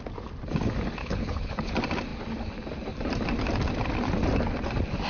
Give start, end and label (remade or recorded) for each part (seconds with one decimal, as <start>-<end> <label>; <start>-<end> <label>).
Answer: 0.0-1.0 recorded; 1.0-1.7 remade; 1.7-5.1 recorded